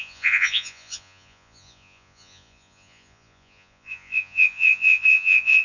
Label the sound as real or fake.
fake